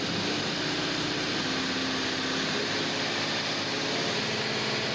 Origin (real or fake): real